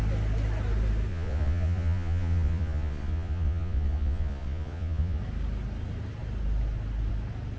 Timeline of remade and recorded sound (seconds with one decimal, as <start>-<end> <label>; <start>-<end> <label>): 0.0-1.1 recorded; 1.1-5.2 remade; 5.2-7.6 recorded